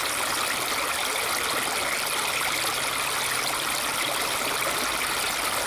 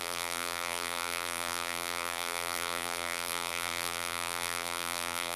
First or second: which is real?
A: first